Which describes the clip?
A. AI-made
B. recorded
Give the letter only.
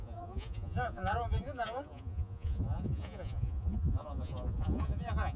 A